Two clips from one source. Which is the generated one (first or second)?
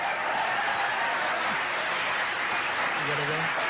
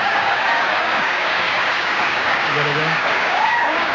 second